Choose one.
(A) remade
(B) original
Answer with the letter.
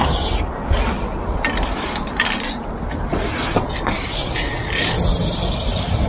B